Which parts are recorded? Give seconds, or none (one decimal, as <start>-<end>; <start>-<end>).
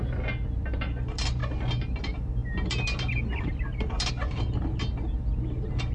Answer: 0.0-5.9